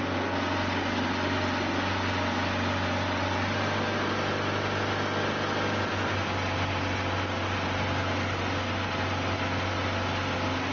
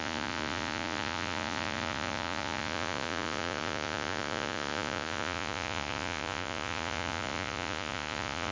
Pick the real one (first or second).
first